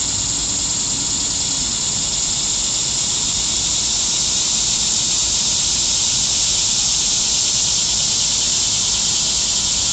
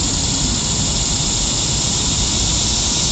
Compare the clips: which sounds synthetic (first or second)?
second